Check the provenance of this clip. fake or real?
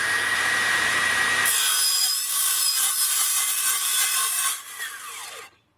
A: fake